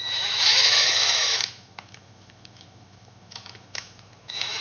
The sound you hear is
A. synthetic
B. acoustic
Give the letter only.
A